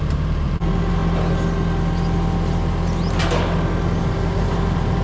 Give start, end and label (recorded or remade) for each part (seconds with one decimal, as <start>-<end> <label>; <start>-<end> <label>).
0.0-1.0 remade; 1.0-4.0 recorded; 4.0-5.0 remade